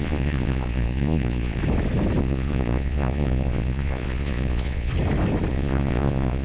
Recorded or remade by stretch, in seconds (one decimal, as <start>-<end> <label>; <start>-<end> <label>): 0.0-1.6 remade; 1.6-2.2 recorded; 2.2-4.9 remade; 4.9-5.5 recorded; 5.5-6.4 remade